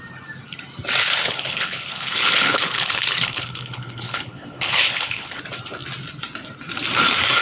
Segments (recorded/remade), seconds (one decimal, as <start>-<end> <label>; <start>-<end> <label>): 0.0-1.2 recorded; 1.2-5.4 remade; 5.4-7.4 recorded